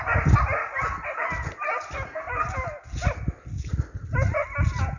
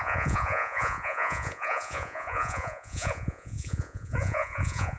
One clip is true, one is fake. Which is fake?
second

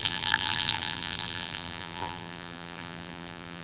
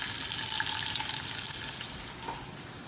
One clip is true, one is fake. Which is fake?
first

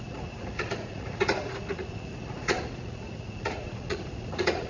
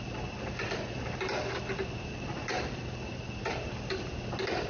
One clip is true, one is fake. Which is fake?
first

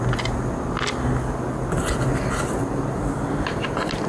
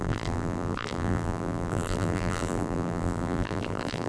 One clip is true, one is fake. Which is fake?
second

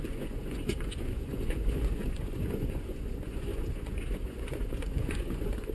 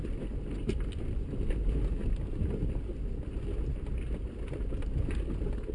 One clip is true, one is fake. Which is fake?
first